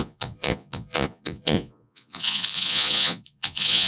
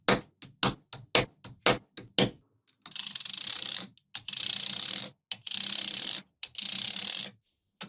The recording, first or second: second